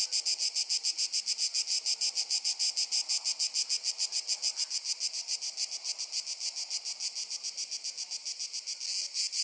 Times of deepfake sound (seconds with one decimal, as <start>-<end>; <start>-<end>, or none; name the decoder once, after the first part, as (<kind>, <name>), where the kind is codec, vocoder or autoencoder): none